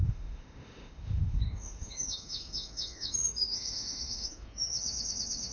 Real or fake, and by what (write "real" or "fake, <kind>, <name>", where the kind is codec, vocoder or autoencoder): fake, autoencoder, DAC-VAE